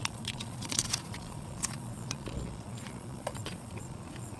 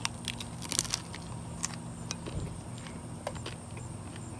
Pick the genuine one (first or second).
second